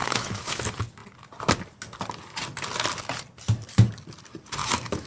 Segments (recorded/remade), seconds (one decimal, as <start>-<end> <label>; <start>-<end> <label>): 0.0-0.6 remade; 0.6-4.6 recorded; 4.6-5.1 remade